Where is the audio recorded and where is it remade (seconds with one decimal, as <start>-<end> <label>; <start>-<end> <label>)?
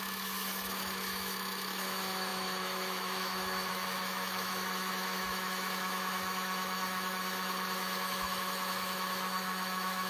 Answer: 0.0-10.1 remade